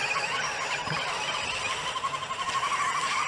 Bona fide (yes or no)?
yes